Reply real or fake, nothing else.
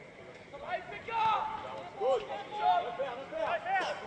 real